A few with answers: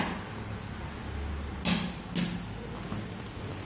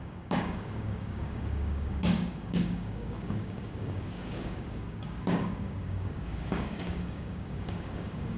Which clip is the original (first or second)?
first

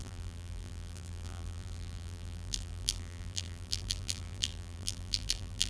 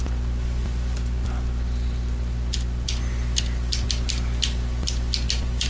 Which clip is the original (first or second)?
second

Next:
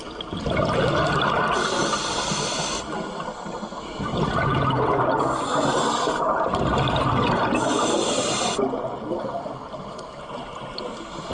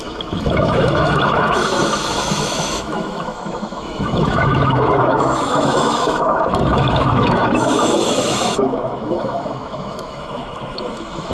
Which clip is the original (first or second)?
first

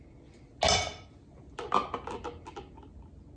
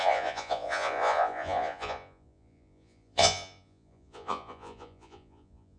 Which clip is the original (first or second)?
first